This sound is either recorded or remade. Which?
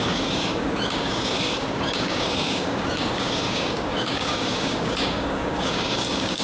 remade